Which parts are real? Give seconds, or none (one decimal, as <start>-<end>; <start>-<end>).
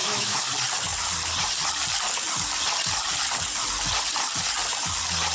0.5-5.3